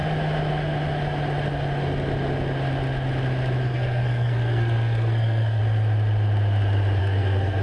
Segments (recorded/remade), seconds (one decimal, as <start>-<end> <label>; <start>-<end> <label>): 0.0-3.6 recorded; 3.6-5.6 remade; 5.6-7.0 recorded; 7.0-7.6 remade